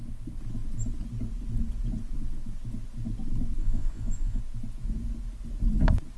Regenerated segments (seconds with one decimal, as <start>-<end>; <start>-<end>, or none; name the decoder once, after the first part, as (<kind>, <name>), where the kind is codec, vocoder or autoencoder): 3.6-4.4 (vocoder, Vocos)